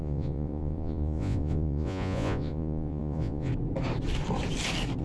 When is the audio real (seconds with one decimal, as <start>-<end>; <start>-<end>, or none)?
3.5-5.0